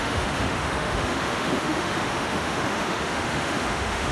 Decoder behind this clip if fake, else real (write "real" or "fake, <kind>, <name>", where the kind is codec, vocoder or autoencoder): fake, autoencoder, DAC-VAE